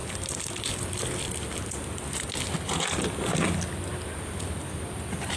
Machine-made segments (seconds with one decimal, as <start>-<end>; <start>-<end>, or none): none